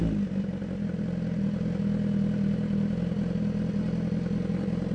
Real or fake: real